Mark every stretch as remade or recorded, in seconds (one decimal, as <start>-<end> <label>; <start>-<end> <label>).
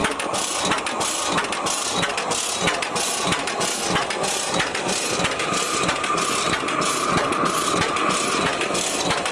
0.0-9.3 recorded